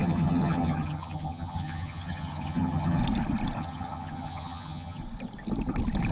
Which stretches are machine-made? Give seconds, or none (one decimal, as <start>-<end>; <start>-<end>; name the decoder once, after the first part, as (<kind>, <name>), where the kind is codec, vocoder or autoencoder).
0.0-3.0 (vocoder, HiFi-GAN); 3.6-5.0